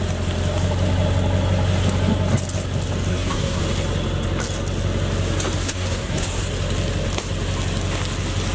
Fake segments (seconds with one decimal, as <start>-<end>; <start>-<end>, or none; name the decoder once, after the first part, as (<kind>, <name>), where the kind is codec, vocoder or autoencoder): 3.1-3.6 (codec, SNAC); 5.6-6.4